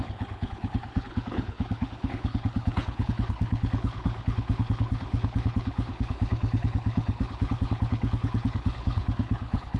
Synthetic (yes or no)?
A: yes